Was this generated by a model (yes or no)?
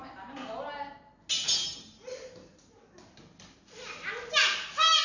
no